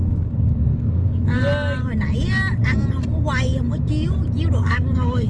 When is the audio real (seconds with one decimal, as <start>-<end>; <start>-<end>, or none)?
1.4-4.6